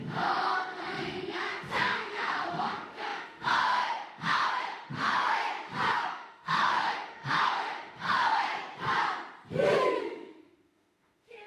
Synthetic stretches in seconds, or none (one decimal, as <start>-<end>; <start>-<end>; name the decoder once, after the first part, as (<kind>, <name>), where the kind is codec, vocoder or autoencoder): 0.0-5.4 (autoencoder, DAC-VAE); 6.0-8.5; 10.0-11.5